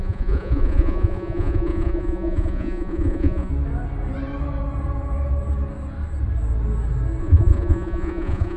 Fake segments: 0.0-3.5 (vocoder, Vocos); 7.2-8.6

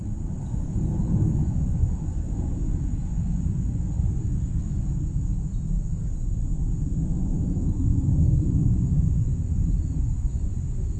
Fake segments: 1.3-4.9 (vocoder, Vocos); 6.1-11.0

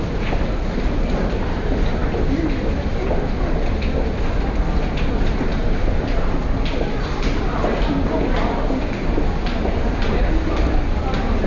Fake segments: none

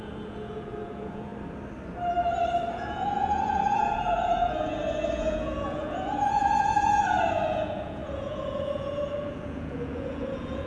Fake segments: 0.0-1.3 (vocoder, Vocos); 2.7-10.7